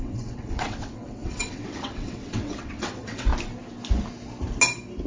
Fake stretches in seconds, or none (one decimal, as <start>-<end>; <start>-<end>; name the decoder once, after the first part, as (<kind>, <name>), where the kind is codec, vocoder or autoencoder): 0.0-3.3 (vocoder, WaveNeXt)